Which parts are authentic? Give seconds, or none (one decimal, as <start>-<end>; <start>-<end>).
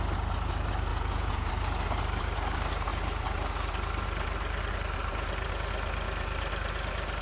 0.0-0.9; 1.5-7.2